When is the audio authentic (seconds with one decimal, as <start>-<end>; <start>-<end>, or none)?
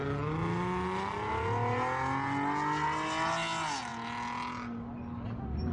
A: 0.0-5.7